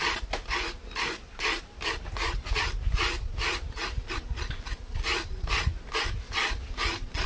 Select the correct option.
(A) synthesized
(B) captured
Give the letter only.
B